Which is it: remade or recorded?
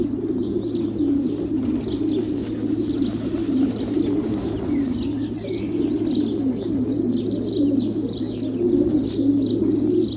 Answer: recorded